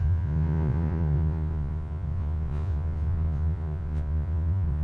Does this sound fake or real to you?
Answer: fake